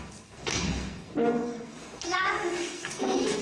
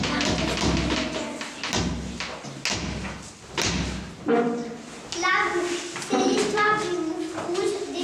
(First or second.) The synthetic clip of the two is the first